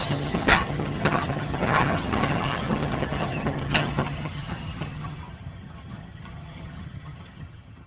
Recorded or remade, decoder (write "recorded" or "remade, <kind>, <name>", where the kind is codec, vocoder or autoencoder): remade, vocoder, HiFi-GAN